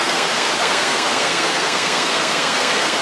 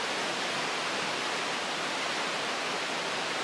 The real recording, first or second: second